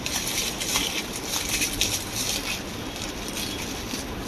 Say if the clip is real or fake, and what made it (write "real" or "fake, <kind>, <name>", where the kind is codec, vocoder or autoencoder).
fake, vocoder, BigVGAN v2